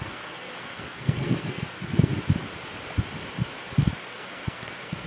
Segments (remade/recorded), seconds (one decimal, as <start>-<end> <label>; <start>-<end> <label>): 0.0-2.1 remade; 2.1-3.8 recorded; 3.8-5.1 remade

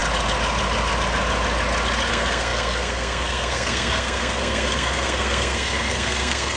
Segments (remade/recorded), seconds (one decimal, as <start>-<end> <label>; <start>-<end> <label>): 0.0-2.1 recorded; 2.1-6.6 remade